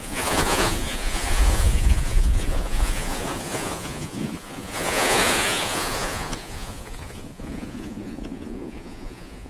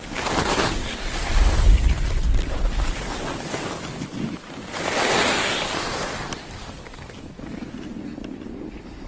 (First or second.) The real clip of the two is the second